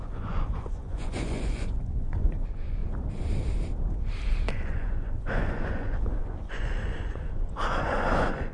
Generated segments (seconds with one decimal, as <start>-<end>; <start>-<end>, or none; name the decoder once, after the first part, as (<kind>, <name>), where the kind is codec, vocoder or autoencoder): 0.0-2.8 (vocoder, Vocos); 4.5-8.5